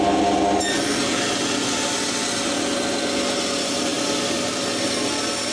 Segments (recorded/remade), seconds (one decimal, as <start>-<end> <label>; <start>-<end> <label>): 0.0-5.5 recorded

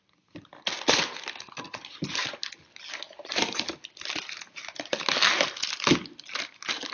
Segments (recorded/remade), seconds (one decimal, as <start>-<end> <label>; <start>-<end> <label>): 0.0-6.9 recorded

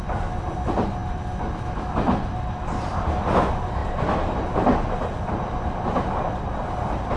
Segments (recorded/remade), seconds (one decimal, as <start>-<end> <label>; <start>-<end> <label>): 0.0-7.2 recorded

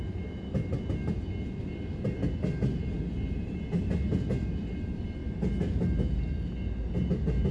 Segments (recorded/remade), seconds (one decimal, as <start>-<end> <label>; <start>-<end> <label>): 0.0-7.5 recorded

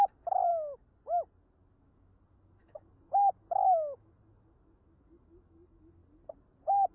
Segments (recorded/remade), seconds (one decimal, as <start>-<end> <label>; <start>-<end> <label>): 0.0-0.5 remade; 0.5-1.8 recorded; 1.8-6.0 remade; 6.0-6.9 recorded

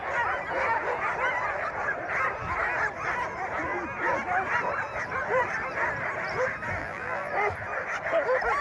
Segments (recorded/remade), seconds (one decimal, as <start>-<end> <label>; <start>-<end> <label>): 0.0-6.8 recorded; 6.8-7.3 remade; 7.3-8.6 recorded

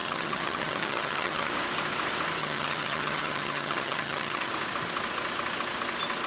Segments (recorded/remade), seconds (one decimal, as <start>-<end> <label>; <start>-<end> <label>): 0.0-1.5 remade; 1.5-2.4 recorded; 2.4-4.5 remade; 4.5-6.3 recorded